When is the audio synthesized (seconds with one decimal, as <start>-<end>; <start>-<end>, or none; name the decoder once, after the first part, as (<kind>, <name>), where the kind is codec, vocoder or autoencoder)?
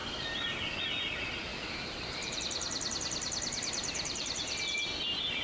1.5-2.4 (vocoder, BigVGAN v2); 3.8-4.6